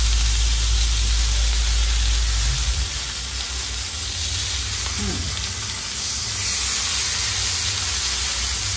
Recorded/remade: recorded